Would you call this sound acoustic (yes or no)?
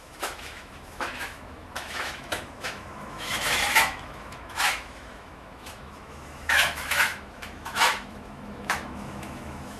no